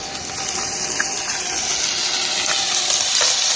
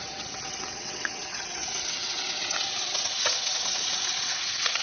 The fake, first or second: second